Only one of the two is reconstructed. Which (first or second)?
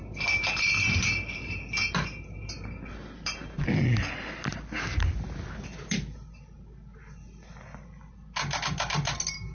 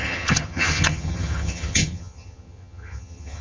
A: second